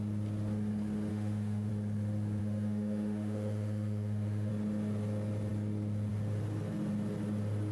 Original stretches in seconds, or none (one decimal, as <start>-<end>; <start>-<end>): 0.0-1.1; 1.7-2.4; 4.5-7.7